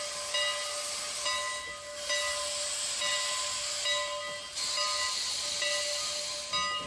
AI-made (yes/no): no